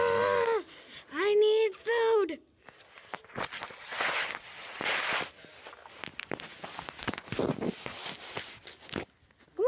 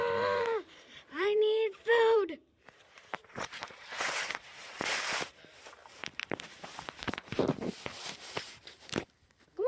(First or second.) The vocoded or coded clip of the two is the second